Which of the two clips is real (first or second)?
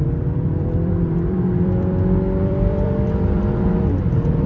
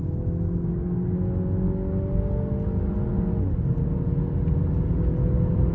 second